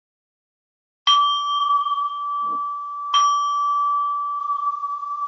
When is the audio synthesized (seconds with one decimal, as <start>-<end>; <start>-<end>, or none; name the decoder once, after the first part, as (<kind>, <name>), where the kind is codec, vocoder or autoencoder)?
1.6-2.1 (vocoder, Vocos); 4.4-5.3

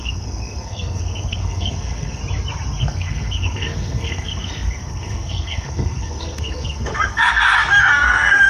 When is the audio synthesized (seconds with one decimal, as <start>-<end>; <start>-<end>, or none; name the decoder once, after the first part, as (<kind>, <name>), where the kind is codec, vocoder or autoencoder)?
0.0-2.2 (codec, SNAC); 2.8-8.5

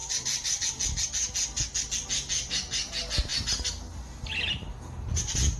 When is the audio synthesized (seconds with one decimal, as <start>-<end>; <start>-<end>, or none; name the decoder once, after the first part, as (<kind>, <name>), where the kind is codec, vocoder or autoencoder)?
0.0-0.6 (vocoder, BigVGAN v2)

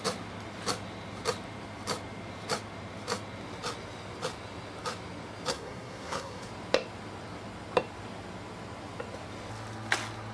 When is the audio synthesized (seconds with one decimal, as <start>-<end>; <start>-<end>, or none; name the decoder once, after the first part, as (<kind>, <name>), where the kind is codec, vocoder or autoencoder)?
5.5-6.5 (codec, SNAC)

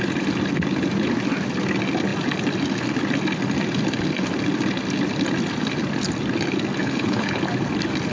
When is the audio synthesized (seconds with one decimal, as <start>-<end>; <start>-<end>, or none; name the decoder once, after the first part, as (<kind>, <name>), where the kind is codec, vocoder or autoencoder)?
6.8-7.4 (codec, HILCodec)

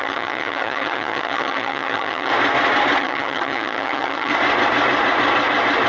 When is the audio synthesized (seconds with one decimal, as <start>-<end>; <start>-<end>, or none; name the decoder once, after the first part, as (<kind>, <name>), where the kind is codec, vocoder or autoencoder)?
0.0-2.3 (vocoder, HiFi-GAN); 3.0-4.3

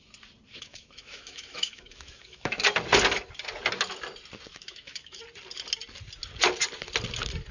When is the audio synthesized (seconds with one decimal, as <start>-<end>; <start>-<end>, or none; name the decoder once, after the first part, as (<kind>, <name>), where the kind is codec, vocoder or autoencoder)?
0.5-2.7 (autoencoder, DAC-VAE); 4.5-5.2